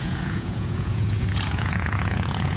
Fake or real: fake